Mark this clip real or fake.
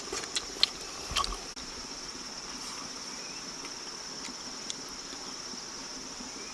real